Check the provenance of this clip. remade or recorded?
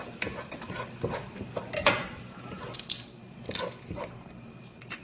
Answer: remade